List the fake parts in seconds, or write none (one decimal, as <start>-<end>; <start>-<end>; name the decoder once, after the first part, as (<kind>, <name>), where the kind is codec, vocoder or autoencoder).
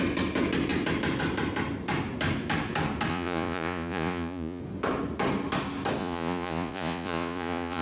3.1-4.6 (vocoder, Vocos); 6.0-7.8